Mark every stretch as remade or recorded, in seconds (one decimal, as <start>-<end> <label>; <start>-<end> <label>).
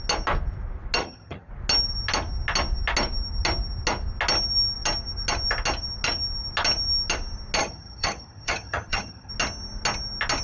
0.0-1.0 recorded; 1.0-1.5 remade; 1.5-7.6 recorded; 7.6-9.3 remade; 9.3-10.4 recorded